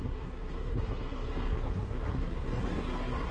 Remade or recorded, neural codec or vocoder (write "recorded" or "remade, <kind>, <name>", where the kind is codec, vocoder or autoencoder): remade, codec, SNAC